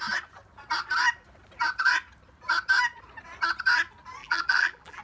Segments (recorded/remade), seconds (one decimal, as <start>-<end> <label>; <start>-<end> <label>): 0.0-4.2 recorded; 4.2-5.0 remade